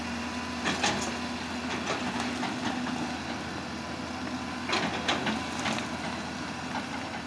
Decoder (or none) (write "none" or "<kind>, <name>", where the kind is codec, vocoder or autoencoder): none